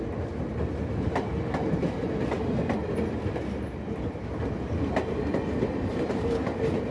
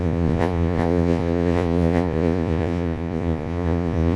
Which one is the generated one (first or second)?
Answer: second